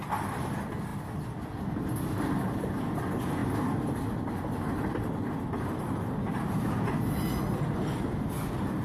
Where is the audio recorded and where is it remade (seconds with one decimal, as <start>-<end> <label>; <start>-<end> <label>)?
0.0-8.8 recorded